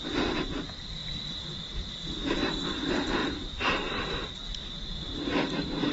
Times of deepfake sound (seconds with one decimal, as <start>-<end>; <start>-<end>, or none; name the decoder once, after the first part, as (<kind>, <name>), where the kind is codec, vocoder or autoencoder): 1.0-1.6 (vocoder, BigVGAN v2); 3.2-4.7